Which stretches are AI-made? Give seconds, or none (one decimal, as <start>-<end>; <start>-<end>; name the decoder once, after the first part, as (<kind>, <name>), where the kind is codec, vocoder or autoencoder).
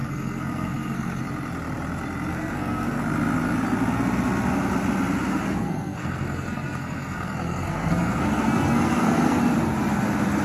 0.0-1.2 (codec, SNAC); 2.3-3.0; 5.3-9.4